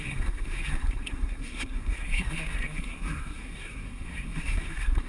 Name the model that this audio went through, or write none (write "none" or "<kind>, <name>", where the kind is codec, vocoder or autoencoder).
codec, SNAC